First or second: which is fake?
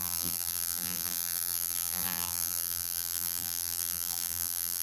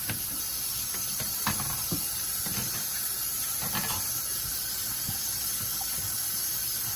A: first